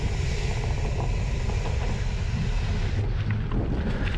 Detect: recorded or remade recorded